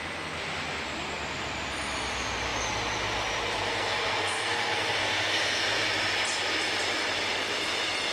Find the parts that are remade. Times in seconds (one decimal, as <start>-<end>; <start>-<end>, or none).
3.7-5.6

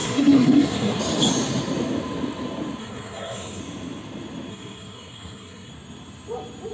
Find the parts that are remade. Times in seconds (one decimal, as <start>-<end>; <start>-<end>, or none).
0.0-1.0; 2.8-3.6; 4.5-5.7